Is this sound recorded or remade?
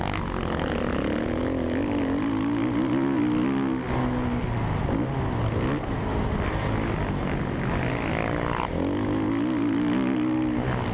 recorded